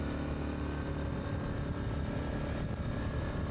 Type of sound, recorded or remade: recorded